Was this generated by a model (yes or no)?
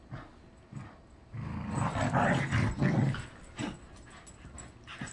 no